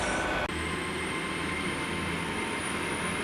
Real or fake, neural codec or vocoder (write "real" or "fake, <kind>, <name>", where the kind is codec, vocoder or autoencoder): real